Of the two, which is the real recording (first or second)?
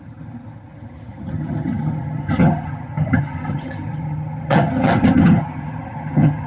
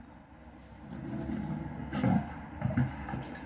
second